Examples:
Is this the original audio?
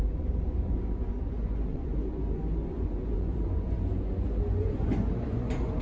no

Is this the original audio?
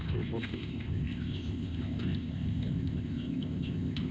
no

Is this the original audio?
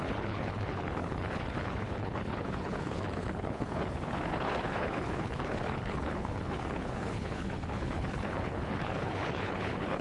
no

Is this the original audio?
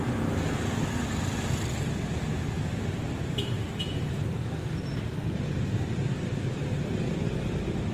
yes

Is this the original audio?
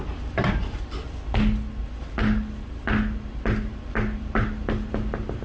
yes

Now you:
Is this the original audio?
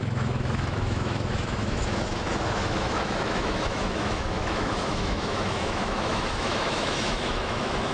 no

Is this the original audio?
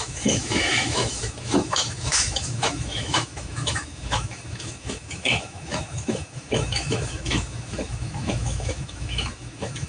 no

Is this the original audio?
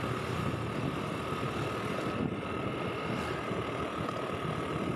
yes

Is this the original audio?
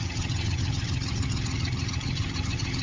no